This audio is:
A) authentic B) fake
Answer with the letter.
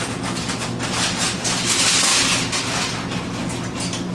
A